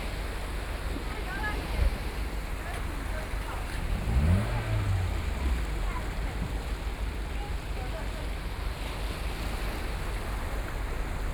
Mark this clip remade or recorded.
recorded